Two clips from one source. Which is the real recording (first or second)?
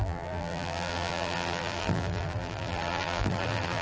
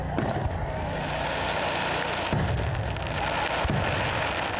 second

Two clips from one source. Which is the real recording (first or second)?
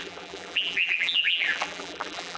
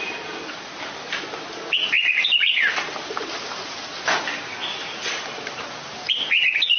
second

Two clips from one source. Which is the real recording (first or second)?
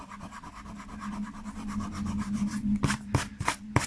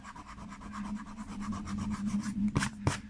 first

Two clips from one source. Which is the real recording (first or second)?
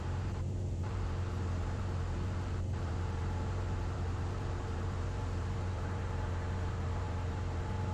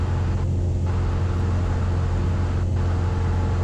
second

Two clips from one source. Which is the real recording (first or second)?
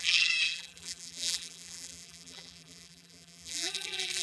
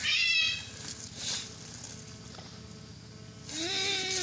second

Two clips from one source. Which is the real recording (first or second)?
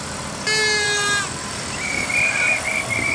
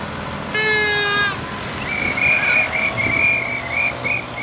second